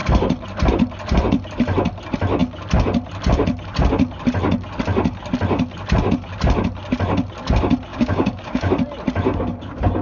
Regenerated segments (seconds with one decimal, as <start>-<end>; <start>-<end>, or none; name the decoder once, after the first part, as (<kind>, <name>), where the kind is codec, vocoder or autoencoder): 7.9-8.7 (codec, DAC)